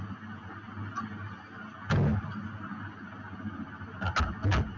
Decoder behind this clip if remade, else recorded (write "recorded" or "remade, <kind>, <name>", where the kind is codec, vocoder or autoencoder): recorded